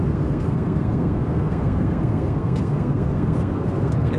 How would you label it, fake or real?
fake